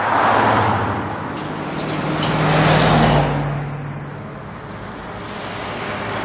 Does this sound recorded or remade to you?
recorded